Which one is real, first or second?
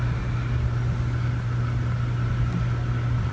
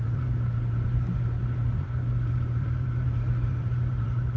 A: first